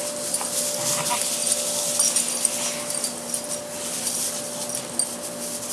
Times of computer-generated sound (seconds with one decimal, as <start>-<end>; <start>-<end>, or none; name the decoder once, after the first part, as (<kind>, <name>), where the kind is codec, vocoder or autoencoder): none